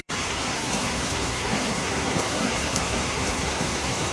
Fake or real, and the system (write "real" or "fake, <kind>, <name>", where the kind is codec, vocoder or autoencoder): fake, codec, SNAC